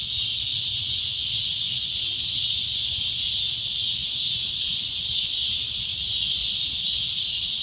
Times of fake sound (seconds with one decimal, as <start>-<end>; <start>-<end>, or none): 0.5-3.5; 4.0-5.3